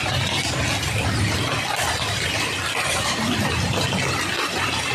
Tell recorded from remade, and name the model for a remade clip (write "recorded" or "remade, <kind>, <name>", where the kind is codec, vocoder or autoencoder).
recorded